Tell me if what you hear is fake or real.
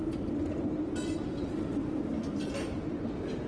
real